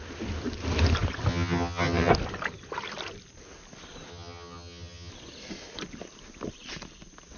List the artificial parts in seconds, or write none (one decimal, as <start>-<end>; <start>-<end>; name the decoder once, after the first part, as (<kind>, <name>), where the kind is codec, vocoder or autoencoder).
1.3-2.1 (vocoder, HiFi-GAN); 4.1-5.1